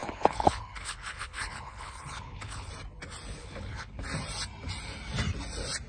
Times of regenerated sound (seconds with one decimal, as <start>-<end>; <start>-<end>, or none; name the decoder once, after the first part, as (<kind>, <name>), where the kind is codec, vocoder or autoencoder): 0.0-2.7 (codec, HILCodec); 3.4-4.0